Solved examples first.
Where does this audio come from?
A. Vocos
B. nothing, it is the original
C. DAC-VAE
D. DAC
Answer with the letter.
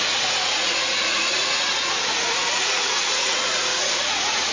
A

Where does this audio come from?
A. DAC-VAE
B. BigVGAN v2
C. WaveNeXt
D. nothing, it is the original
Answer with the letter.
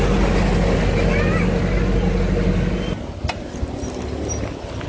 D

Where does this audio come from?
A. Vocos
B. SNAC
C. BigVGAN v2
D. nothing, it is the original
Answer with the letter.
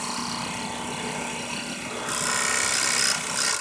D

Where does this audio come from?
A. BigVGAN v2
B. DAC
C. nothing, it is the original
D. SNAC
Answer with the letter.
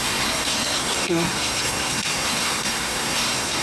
D